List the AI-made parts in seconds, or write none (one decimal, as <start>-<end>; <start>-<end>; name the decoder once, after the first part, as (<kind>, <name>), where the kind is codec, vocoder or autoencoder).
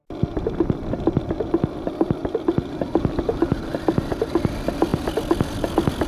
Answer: none